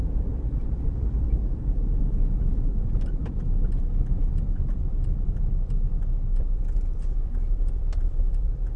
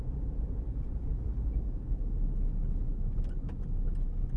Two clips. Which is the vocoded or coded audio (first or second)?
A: first